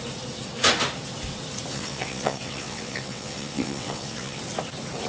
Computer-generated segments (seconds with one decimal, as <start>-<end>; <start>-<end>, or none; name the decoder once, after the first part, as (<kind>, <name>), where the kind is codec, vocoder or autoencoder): 1.7-4.4 (vocoder, WaveNeXt)